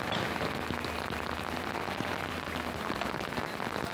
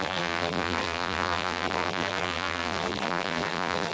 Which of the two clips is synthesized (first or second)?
second